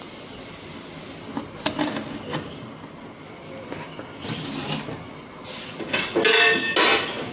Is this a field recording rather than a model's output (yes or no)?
yes